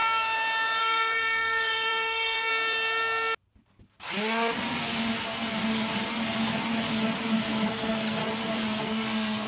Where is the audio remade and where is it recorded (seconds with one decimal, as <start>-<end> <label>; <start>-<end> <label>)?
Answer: 0.0-0.8 recorded; 0.8-2.5 remade; 2.5-7.7 recorded; 7.7-8.2 remade; 8.2-8.8 recorded; 8.8-9.5 remade